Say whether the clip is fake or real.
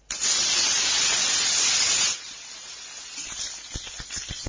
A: real